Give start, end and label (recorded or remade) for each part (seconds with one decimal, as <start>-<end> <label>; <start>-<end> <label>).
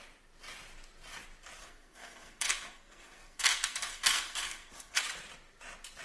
0.0-1.6 recorded; 1.6-5.0 remade; 5.0-6.0 recorded